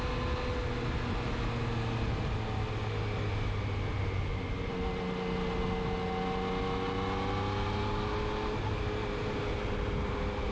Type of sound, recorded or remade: recorded